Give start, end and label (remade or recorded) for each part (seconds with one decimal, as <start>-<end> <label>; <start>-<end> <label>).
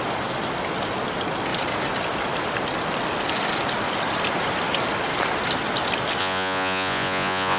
0.0-6.2 recorded; 6.2-7.6 remade